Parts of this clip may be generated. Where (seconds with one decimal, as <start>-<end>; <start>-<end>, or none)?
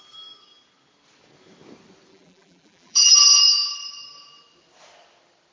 2.1-3.4